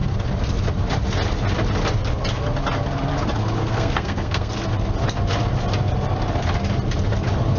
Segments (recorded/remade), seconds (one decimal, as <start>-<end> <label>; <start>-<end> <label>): 0.0-3.6 recorded; 3.6-4.5 remade; 4.5-7.6 recorded